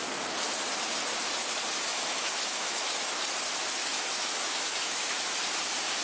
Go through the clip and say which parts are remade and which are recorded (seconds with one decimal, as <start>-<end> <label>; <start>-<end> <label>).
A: 0.0-1.9 recorded; 1.9-3.1 remade; 3.1-3.8 recorded; 3.8-5.4 remade; 5.4-6.0 recorded